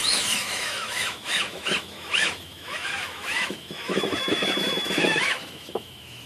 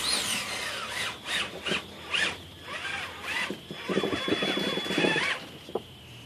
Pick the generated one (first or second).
first